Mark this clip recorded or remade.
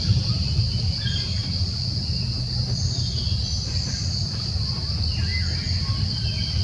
recorded